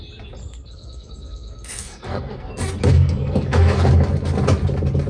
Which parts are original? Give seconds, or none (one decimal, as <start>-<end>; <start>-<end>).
0.0-0.4; 2.5-2.9; 3.9-5.1